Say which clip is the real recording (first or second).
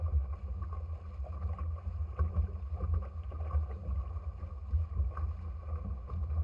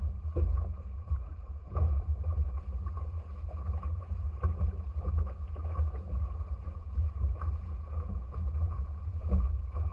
first